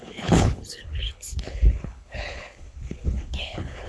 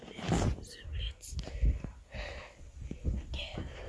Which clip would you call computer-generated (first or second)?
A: first